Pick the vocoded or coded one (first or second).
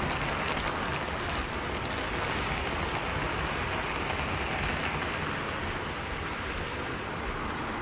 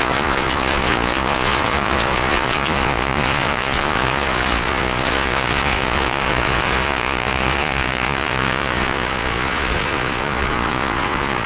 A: second